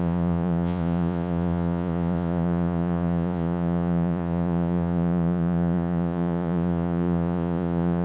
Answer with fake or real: fake